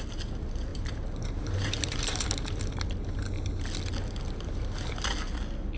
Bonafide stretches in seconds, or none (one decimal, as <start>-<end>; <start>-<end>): 0.0-0.7; 3.3-5.8